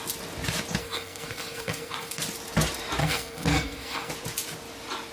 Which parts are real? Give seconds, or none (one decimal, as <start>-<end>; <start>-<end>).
0.0-0.8; 2.2-3.0; 4.1-5.1